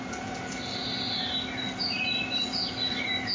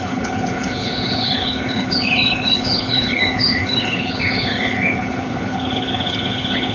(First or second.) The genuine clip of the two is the first